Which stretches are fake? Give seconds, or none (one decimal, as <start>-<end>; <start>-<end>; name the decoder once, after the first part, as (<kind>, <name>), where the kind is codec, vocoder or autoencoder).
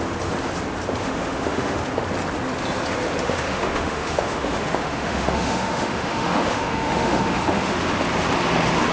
1.0-1.8 (autoencoder, DAC-VAE); 3.2-7.8